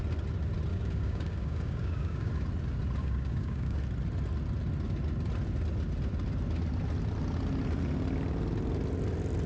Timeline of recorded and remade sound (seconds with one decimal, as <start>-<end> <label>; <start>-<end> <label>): 0.0-0.7 recorded; 0.7-2.3 remade; 2.3-3.0 recorded; 3.0-3.8 remade; 3.8-9.5 recorded